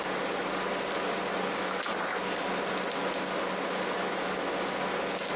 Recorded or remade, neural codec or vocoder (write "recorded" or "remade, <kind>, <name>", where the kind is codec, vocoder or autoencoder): recorded